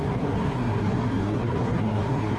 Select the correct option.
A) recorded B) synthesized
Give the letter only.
B